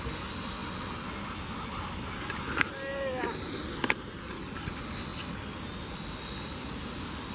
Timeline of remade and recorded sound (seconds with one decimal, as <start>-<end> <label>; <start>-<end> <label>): 0.0-7.3 recorded